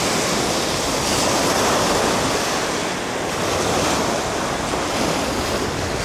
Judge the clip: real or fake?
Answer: real